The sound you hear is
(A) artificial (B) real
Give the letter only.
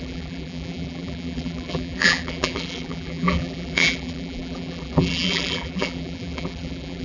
A